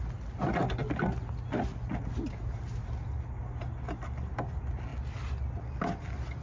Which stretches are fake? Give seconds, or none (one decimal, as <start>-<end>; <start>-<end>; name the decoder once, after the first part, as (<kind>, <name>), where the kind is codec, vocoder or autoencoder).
none